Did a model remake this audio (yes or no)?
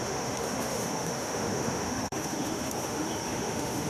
yes